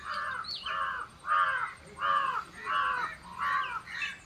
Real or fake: real